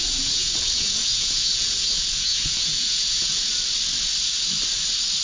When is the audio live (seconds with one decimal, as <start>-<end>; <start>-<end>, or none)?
3.5-5.2